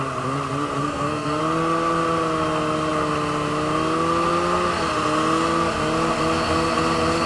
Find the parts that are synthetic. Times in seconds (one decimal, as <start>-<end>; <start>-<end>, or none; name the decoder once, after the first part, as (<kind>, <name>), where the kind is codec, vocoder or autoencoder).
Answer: 0.8-1.4 (codec, SNAC)